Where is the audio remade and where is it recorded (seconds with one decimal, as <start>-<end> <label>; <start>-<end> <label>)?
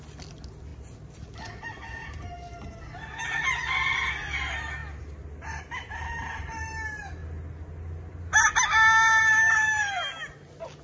0.0-10.8 recorded